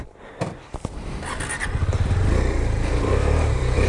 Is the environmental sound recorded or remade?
remade